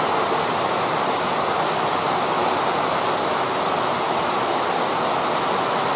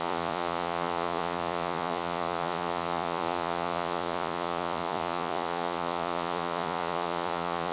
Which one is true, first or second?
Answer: first